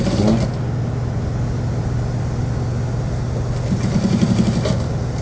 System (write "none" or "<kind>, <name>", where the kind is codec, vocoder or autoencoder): none